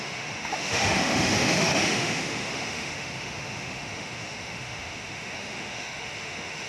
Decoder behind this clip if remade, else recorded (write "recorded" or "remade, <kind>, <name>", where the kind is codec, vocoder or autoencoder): remade, autoencoder, DAC-VAE